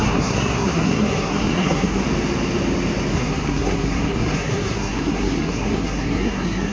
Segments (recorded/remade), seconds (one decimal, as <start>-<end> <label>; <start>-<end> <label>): 0.0-2.0 remade; 2.0-3.1 recorded; 3.1-6.7 remade

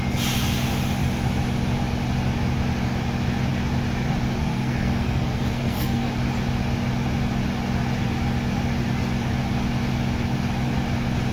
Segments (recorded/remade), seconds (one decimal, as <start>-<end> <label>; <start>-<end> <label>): 0.0-4.4 recorded; 4.4-6.1 remade; 6.1-11.3 recorded

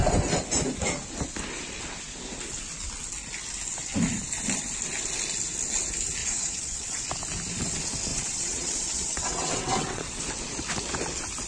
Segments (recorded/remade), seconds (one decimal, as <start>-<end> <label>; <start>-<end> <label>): 0.0-6.2 recorded; 6.2-7.0 remade; 7.0-8.1 recorded; 8.1-10.2 remade; 10.2-11.5 recorded

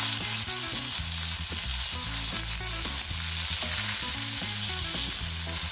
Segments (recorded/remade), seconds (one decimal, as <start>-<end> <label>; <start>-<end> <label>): 0.0-5.7 recorded

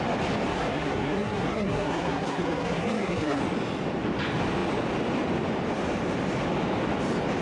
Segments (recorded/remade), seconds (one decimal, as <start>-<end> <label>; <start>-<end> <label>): 0.0-0.5 recorded; 0.5-3.4 remade; 3.4-7.4 recorded

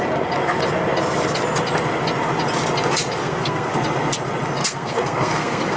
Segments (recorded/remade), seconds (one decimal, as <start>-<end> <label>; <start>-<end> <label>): 0.0-3.2 recorded; 3.2-3.7 remade; 3.7-4.6 recorded; 4.6-5.8 remade

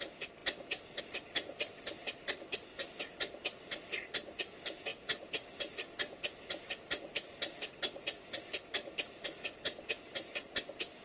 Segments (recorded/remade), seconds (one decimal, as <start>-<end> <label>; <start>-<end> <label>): 0.0-11.0 recorded